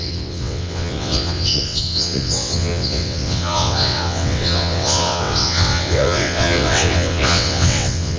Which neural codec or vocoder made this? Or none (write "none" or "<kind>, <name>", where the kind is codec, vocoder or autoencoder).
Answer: vocoder, WaveNeXt